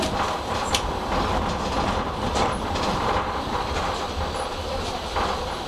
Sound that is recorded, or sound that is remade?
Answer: remade